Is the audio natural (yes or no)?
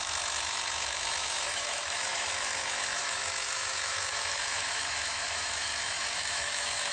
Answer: no